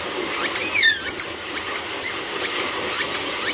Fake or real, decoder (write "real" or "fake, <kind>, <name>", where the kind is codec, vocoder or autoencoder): fake, vocoder, BigVGAN v2